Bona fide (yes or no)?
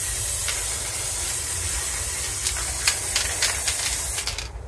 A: yes